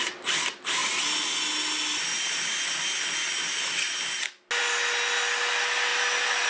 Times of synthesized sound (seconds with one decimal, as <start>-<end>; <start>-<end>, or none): none